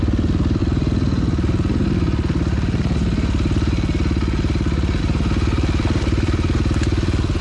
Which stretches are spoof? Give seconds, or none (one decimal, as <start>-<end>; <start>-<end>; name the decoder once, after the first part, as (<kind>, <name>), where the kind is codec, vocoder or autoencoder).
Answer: 0.0-0.6 (vocoder, BigVGAN v2); 5.0-7.4